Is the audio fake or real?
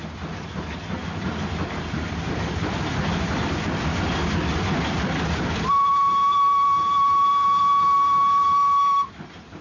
real